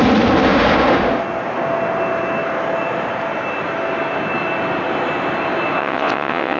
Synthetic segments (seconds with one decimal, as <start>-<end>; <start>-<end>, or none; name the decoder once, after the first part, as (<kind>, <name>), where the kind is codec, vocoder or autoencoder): 5.8-6.6 (vocoder, WaveNeXt)